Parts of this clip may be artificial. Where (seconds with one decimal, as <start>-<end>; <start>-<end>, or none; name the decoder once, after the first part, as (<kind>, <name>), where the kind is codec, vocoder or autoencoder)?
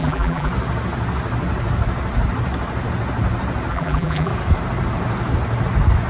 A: 0.0-0.5 (vocoder, BigVGAN v2); 3.7-4.3